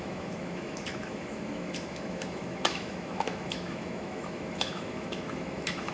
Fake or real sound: fake